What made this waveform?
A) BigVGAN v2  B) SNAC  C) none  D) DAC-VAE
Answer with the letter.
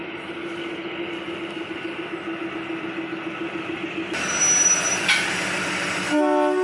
C